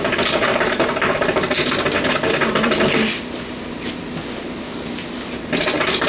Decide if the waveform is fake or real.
real